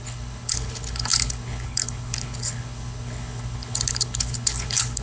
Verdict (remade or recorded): remade